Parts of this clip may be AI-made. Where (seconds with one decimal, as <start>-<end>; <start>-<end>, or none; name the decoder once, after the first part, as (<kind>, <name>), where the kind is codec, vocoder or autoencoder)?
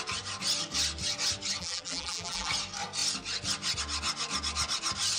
1.6-2.5 (vocoder, BigVGAN v2)